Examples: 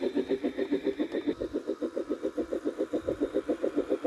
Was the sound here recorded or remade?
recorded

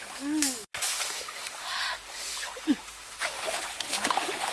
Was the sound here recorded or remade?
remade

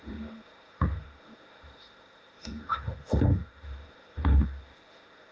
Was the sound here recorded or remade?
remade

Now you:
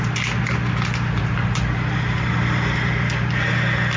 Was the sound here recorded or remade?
recorded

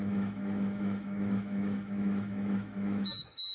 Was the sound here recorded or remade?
remade